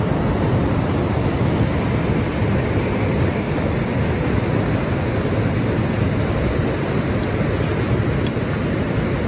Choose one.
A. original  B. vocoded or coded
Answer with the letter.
A